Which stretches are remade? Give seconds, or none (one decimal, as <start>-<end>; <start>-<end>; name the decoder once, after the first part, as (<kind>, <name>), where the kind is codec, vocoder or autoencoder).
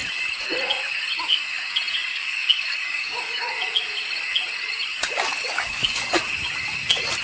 2.1-3.5 (codec, DAC); 5.3-6.2